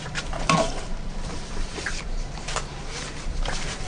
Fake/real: fake